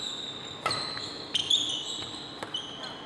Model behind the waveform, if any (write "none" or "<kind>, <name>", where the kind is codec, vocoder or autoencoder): none